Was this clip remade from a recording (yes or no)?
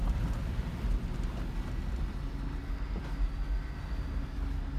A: no